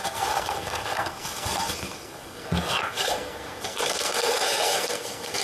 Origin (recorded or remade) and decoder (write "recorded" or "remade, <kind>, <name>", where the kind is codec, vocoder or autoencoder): remade, codec, SNAC